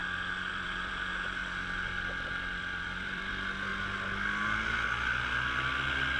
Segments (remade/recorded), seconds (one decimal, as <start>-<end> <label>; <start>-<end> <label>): 0.0-0.5 recorded; 0.5-3.7 remade; 3.7-6.2 recorded